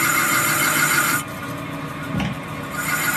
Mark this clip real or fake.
real